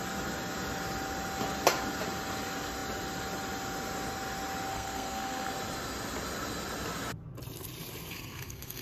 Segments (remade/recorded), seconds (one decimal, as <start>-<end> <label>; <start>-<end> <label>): 0.0-4.7 recorded; 4.7-5.5 remade; 5.5-8.1 recorded; 8.1-8.8 remade